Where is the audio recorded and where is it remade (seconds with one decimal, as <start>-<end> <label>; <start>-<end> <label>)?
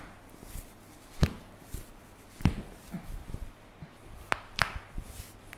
0.0-5.6 recorded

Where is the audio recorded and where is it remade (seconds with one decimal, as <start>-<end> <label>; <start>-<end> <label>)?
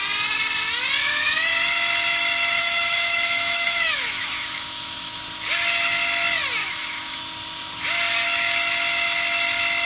0.0-1.0 recorded; 1.0-1.5 remade; 1.5-2.6 recorded; 2.6-5.2 remade; 5.2-6.6 recorded; 6.6-7.2 remade; 7.2-9.9 recorded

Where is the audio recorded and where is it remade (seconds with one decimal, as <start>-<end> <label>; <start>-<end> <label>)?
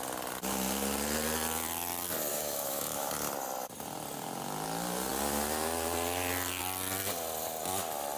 0.0-2.3 recorded; 2.3-3.1 remade; 3.1-8.2 recorded